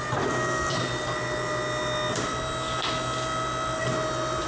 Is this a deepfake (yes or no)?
no